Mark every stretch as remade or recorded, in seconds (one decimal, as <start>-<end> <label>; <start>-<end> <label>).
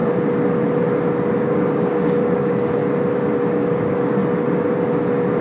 0.0-1.3 recorded; 1.3-2.8 remade; 2.8-3.5 recorded; 3.5-4.2 remade; 4.2-5.4 recorded